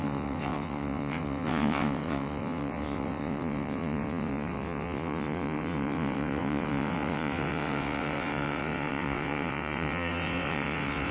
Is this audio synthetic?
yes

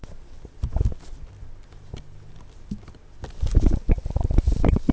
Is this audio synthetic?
no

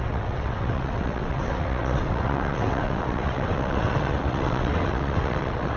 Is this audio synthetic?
yes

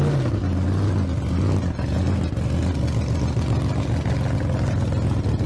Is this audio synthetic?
no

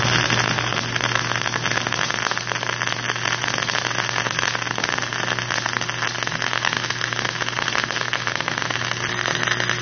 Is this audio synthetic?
no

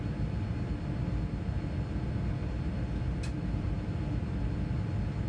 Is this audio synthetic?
no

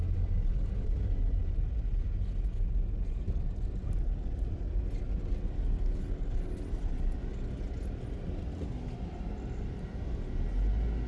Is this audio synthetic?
no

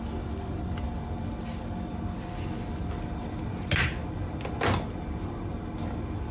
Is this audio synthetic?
no